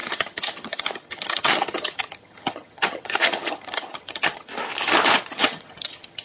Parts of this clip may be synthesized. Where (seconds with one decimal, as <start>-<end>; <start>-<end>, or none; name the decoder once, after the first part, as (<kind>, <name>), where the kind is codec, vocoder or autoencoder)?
0.0-4.5 (vocoder, HiFi-GAN); 5.3-6.2